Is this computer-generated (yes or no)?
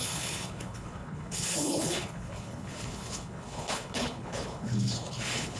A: yes